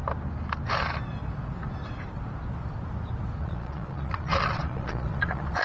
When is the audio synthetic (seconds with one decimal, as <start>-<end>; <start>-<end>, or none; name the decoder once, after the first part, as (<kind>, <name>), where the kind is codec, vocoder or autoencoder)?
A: 3.4-5.6 (vocoder, Vocos)